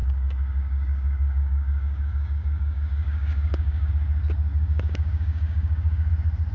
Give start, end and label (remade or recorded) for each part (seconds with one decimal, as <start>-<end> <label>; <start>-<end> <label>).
0.0-3.9 remade; 3.9-4.5 recorded; 4.5-6.1 remade; 6.1-6.5 recorded